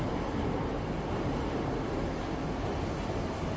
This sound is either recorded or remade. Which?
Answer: recorded